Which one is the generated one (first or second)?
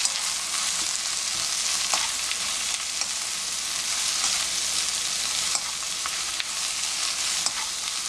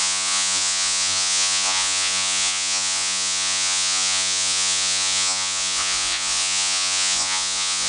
second